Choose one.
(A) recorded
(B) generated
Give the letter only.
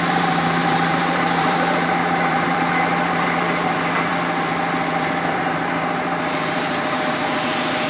B